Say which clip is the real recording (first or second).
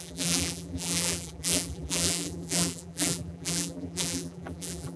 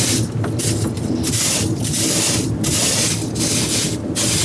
second